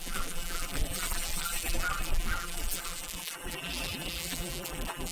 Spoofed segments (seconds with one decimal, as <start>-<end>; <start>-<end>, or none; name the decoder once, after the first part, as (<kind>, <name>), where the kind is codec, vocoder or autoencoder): 0.0-5.1 (vocoder, BigVGAN v2)